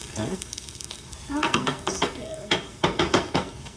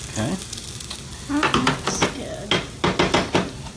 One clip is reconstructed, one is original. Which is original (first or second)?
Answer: second